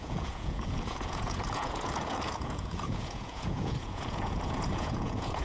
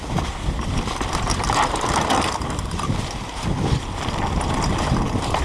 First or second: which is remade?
first